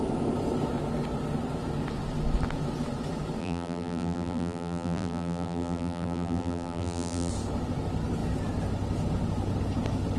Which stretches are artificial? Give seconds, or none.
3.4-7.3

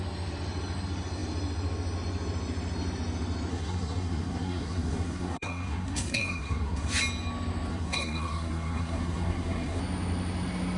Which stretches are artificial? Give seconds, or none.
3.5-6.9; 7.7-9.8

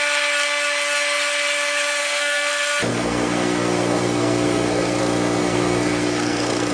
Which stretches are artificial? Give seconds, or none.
2.0-2.5; 2.9-5.0; 5.4-6.7